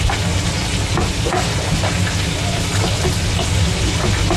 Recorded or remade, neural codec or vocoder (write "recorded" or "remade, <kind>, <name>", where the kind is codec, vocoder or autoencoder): recorded